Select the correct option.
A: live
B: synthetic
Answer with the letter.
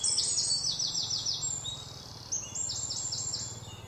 A